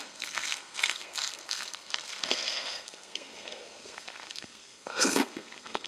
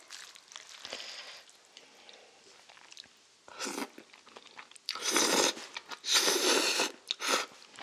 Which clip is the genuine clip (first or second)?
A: second